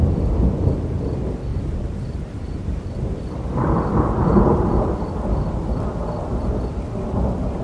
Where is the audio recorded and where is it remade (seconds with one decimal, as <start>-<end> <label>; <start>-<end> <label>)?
0.0-1.5 recorded; 1.5-4.7 remade; 4.7-7.6 recorded